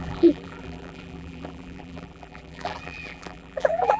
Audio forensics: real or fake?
fake